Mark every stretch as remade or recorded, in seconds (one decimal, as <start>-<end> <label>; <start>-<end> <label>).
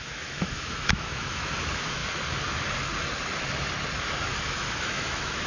0.0-2.0 remade; 2.0-4.4 recorded; 4.4-5.5 remade